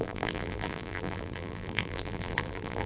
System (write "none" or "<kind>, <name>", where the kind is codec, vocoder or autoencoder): vocoder, BigVGAN v2